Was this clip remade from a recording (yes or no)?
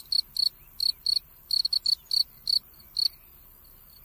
no